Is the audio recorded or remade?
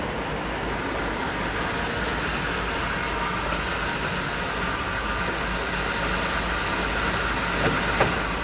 recorded